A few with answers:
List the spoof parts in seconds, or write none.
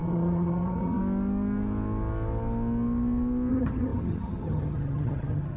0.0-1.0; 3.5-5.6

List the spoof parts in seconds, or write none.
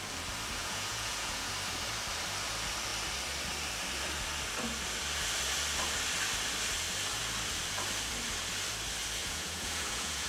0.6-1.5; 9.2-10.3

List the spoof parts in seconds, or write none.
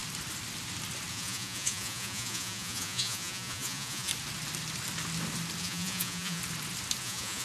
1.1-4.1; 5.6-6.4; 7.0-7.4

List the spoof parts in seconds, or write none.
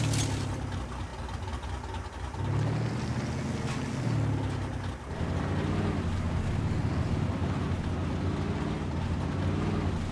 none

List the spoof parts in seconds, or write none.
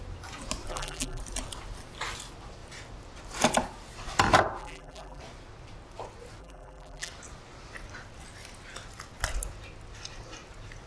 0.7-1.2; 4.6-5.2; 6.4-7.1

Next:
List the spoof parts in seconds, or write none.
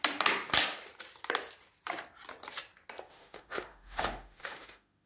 3.1-5.1